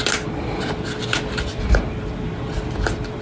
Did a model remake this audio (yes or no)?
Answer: no